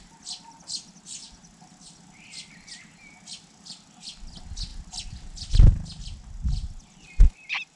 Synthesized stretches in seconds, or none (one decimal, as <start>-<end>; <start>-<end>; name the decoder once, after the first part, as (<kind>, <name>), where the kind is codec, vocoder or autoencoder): none